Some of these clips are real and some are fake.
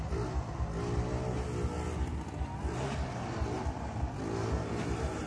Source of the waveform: real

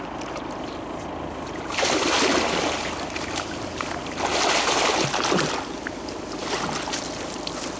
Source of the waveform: real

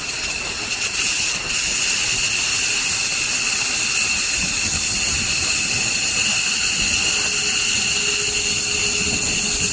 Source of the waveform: real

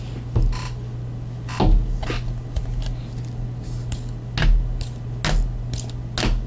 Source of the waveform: real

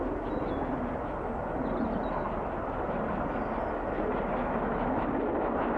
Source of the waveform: real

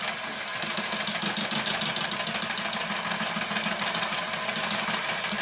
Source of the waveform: real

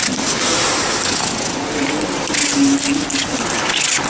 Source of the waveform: real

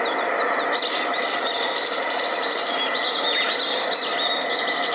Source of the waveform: real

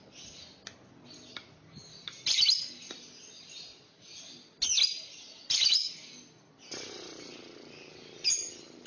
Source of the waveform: real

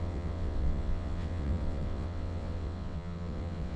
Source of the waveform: fake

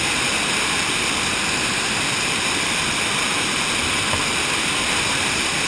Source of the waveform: real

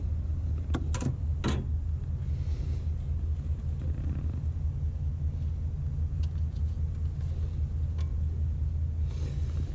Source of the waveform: real